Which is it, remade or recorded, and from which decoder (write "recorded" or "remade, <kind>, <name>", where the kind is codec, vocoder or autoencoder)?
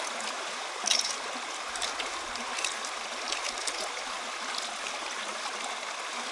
recorded